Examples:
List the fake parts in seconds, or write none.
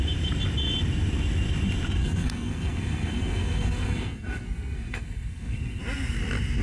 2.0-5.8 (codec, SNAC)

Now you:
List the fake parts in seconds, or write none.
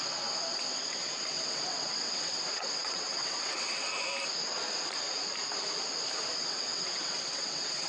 0.0-3.9 (vocoder, WaveNeXt); 6.3-7.9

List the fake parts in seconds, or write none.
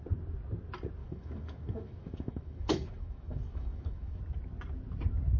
1.0-4.2 (autoencoder, DAC-VAE)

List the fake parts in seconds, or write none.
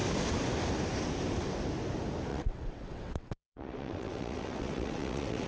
2.3-5.5 (vocoder, WaveNeXt)